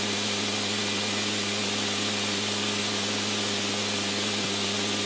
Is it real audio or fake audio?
real